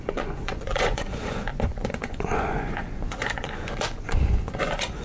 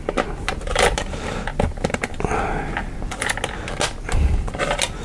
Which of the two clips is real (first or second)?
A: second